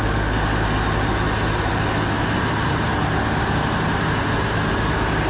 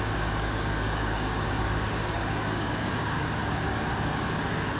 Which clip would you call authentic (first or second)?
first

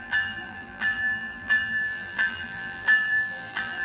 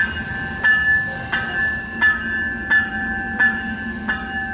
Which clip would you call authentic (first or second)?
second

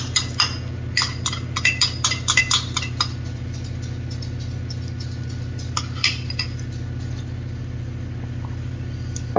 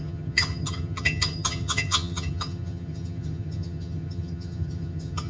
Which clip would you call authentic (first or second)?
first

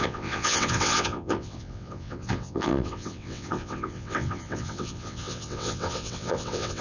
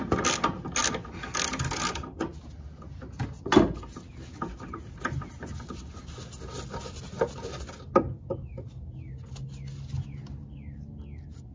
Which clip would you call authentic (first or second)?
second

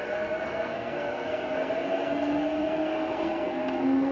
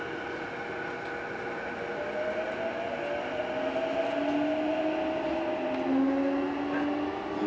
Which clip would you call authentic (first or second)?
second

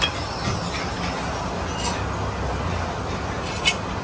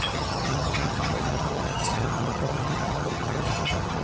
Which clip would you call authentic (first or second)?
first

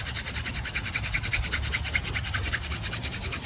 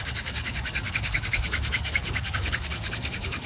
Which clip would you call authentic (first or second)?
first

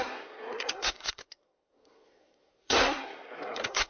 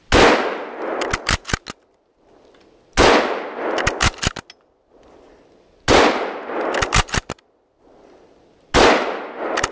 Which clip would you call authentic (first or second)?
second